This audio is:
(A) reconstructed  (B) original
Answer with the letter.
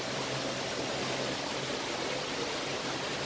B